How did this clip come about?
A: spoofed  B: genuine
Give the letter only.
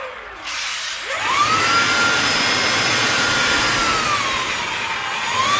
A